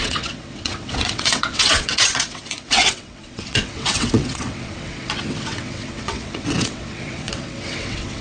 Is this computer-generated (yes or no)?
yes